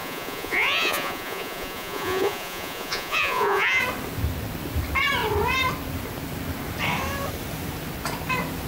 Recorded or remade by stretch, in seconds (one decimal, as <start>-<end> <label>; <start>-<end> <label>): 0.0-3.8 remade; 3.8-8.7 recorded